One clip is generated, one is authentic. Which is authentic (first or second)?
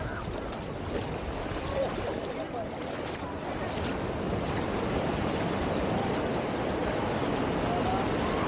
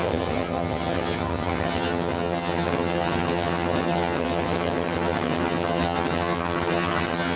first